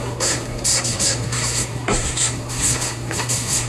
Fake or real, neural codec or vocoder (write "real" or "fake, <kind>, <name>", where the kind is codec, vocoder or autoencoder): fake, codec, SNAC